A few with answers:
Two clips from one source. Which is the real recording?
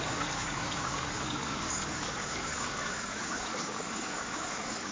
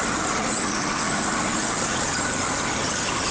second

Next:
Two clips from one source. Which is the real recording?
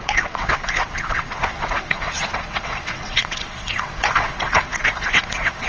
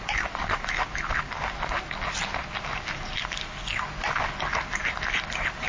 second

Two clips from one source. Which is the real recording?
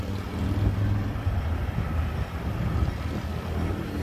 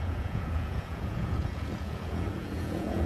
first